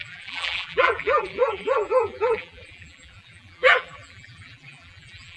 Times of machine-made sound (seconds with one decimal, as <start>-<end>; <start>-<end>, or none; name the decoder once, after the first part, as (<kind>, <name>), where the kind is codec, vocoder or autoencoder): 0.0-5.4 (vocoder, BigVGAN v2)